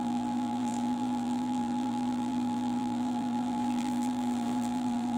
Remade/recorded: remade